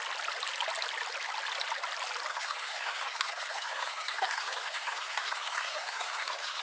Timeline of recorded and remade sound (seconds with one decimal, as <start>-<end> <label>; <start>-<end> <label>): 0.0-2.3 recorded; 2.3-6.6 remade